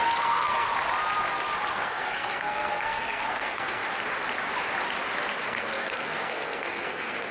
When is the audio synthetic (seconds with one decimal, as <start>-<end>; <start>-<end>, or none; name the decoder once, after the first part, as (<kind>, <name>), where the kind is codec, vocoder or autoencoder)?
0.0-0.7 (codec, SNAC); 1.7-3.8; 5.4-7.3